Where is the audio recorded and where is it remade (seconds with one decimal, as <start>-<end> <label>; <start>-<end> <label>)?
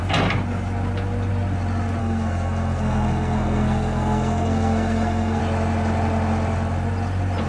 0.0-2.0 recorded; 2.0-5.4 remade; 5.4-7.5 recorded